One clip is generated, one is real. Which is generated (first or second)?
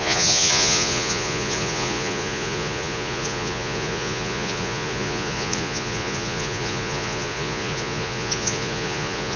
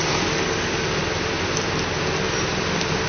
first